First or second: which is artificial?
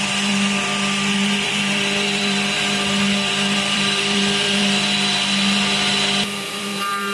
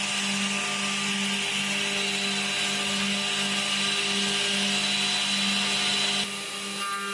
first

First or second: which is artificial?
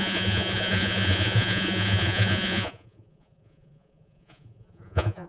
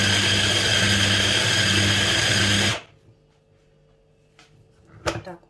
first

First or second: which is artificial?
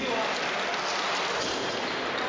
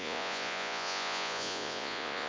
second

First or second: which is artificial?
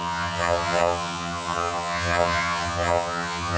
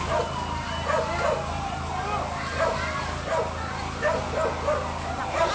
first